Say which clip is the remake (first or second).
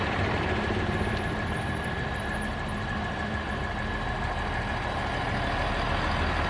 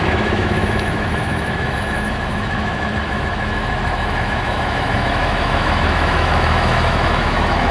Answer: second